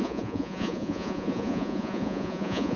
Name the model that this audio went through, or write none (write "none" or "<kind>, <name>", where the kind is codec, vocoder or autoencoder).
vocoder, Vocos